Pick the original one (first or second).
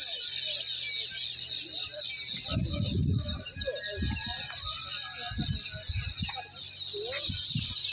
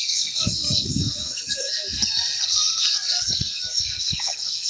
first